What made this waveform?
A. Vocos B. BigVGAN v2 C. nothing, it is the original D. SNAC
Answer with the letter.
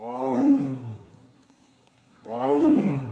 D